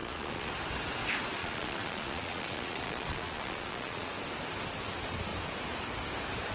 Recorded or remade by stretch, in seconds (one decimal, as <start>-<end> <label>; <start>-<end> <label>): 0.0-0.5 remade; 0.5-1.4 recorded; 1.4-4.1 remade; 4.1-6.5 recorded